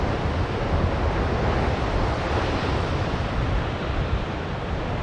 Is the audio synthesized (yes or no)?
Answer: no